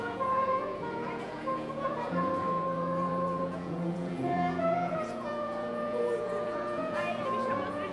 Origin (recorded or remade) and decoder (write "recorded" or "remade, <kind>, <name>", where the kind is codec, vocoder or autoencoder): remade, vocoder, Vocos